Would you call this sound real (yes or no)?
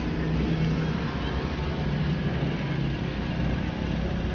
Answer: yes